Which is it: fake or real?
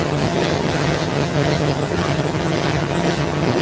fake